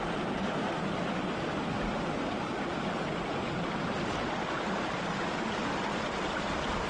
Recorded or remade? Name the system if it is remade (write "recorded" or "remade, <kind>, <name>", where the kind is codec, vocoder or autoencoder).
recorded